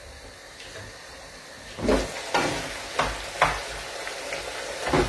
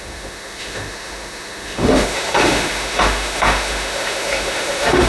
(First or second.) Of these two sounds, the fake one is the second